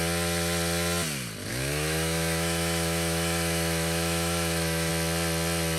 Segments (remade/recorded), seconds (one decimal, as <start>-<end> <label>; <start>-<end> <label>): 0.0-1.5 recorded; 1.5-4.9 remade; 4.9-5.8 recorded